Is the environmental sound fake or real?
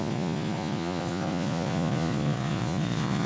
fake